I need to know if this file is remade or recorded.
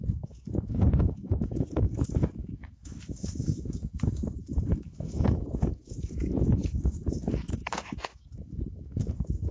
remade